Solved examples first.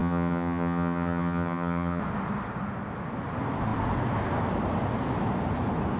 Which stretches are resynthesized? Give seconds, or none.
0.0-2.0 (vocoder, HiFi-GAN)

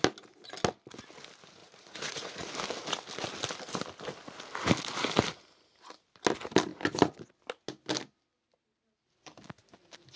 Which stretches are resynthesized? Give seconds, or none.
1.6-2.5 (vocoder, Vocos)

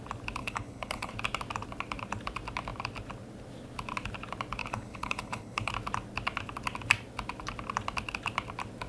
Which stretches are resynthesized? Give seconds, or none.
0.4-1.1 (codec, HILCodec); 4.6-5.7

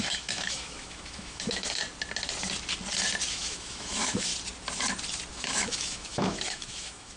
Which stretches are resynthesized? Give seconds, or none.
0.0-1.8 (autoencoder, DAC-VAE); 3.3-4.3; 5.3-7.2